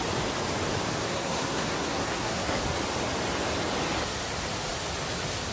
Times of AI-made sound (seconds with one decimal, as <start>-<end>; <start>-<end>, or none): 1.0-2.6